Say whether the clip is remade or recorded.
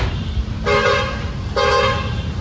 recorded